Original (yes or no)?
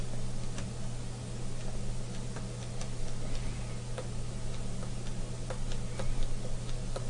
yes